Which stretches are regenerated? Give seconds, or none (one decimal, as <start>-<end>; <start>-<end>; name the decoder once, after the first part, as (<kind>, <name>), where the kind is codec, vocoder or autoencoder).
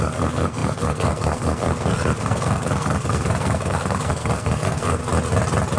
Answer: 0.0-5.0 (codec, SNAC)